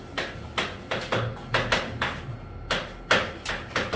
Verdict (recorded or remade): recorded